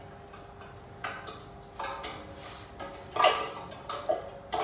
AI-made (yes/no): no